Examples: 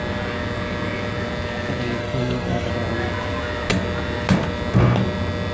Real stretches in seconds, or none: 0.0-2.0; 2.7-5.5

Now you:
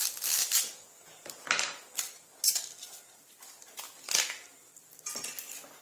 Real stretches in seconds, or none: 0.0-5.8

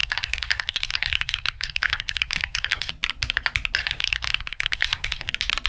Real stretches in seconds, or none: 2.9-3.8; 5.3-5.7

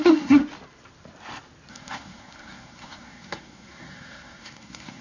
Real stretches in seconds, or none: 0.4-1.7